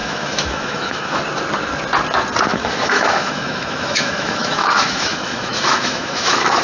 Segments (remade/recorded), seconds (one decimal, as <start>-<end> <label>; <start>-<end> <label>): 0.0-1.2 remade; 1.2-2.5 recorded; 2.5-6.6 remade